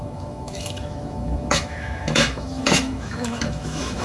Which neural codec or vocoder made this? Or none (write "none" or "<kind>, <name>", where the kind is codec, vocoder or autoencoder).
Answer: autoencoder, DAC-VAE